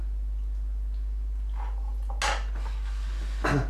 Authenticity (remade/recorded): recorded